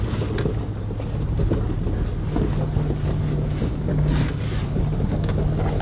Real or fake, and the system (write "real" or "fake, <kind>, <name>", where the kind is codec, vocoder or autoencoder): real